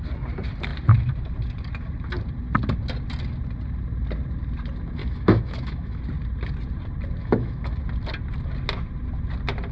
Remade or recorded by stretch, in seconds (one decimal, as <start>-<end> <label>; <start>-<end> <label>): 0.0-5.0 recorded; 5.0-6.0 remade; 6.0-7.2 recorded; 7.2-7.8 remade; 7.8-9.7 recorded

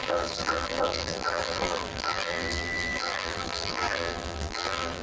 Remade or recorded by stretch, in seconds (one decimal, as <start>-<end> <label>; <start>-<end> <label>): 0.0-5.0 remade

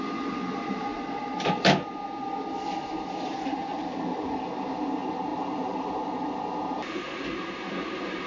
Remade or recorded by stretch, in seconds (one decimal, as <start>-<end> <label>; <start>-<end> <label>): 0.0-0.9 recorded; 0.9-4.0 remade; 4.0-8.3 recorded

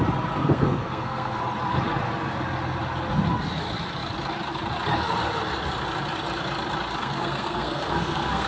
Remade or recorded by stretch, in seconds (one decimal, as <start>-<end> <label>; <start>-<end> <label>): 0.0-0.4 recorded; 0.4-1.4 remade; 1.4-7.0 recorded; 7.0-8.5 remade